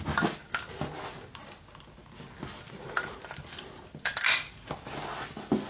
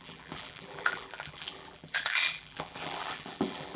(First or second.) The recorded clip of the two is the first